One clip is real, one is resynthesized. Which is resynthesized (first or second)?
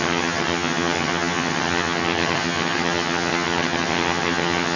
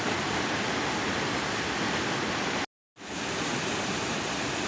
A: first